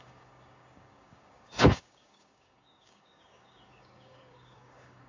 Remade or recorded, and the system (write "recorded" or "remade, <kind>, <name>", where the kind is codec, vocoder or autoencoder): remade, codec, DAC